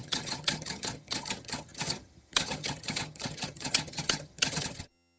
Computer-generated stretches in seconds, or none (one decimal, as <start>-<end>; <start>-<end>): 0.0-5.2